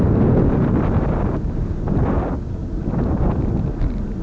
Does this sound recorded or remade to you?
recorded